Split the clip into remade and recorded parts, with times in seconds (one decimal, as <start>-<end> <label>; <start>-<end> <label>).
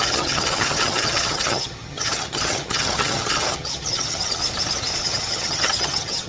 0.0-4.4 remade; 4.4-5.0 recorded; 5.0-6.3 remade